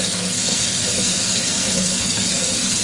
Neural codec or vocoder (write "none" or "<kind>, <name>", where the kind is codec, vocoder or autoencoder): codec, SNAC